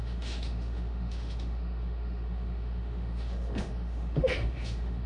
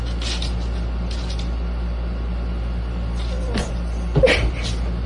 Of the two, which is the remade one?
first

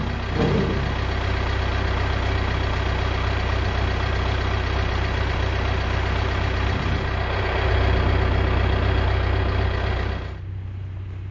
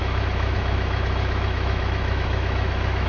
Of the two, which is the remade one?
second